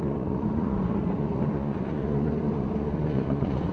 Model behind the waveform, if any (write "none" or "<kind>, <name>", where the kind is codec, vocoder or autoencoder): vocoder, Vocos